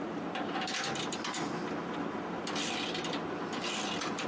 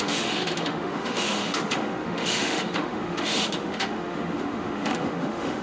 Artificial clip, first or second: second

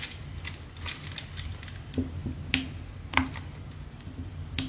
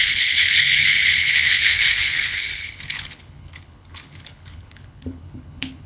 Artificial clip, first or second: second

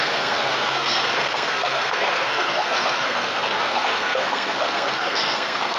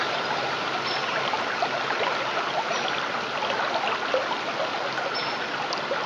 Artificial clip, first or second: first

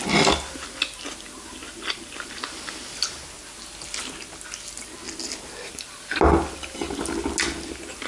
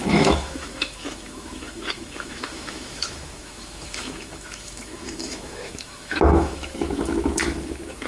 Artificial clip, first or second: second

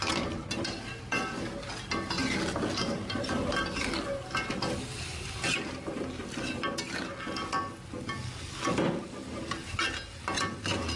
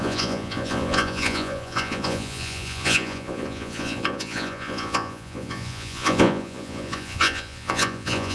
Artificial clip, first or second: second